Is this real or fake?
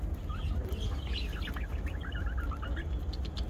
real